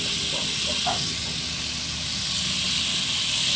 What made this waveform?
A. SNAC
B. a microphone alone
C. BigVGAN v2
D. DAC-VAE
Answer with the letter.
B